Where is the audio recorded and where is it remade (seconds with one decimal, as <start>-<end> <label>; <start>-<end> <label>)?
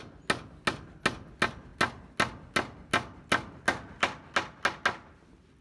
0.0-5.6 recorded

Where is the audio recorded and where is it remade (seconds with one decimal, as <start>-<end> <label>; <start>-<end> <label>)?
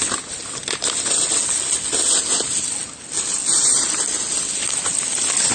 0.0-5.5 recorded